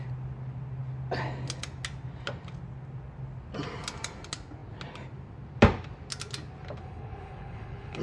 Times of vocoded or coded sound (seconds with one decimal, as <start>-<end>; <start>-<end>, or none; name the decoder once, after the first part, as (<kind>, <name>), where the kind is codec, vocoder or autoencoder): 6.8-8.0 (codec, HILCodec)